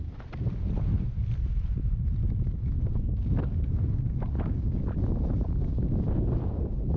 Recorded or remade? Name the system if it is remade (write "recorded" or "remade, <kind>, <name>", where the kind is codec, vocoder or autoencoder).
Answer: recorded